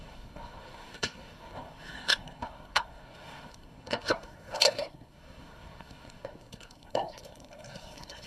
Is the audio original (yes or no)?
no